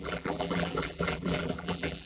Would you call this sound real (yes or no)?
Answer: no